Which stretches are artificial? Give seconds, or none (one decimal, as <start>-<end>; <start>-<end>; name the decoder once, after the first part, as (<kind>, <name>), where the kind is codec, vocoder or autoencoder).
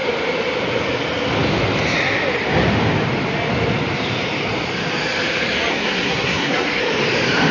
5.7-6.8 (codec, SNAC)